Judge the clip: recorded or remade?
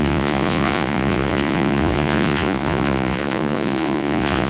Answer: remade